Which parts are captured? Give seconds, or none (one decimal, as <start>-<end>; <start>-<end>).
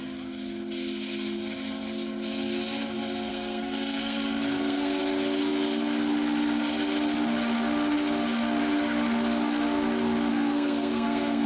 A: 0.0-3.3; 5.0-10.3